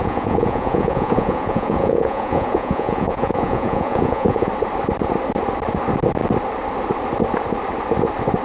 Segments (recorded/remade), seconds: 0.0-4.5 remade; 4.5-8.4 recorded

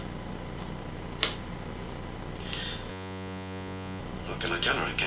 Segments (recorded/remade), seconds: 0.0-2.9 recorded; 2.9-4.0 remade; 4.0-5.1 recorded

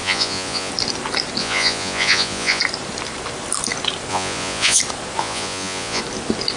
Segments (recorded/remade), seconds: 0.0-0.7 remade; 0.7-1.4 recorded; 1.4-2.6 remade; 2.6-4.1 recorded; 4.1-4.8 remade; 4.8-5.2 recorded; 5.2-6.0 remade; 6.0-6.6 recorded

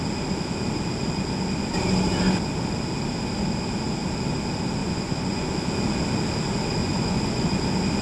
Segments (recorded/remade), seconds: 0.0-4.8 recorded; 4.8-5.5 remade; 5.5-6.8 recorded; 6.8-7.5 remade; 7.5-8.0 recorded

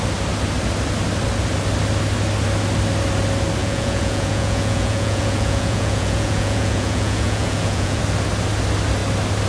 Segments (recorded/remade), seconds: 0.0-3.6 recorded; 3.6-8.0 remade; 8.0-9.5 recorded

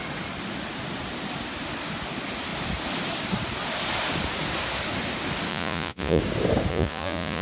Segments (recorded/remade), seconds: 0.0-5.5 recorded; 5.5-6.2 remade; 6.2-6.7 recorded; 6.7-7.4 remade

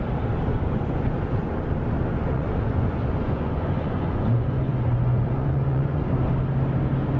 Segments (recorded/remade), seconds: 0.0-0.5 recorded; 0.5-1.6 remade; 1.6-2.3 recorded; 2.3-6.0 remade; 6.0-7.2 recorded

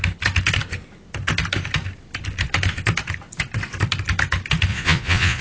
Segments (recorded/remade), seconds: 0.0-4.7 recorded; 4.7-5.4 remade